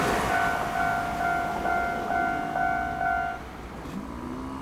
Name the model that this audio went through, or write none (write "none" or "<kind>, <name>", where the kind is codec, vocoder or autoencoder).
none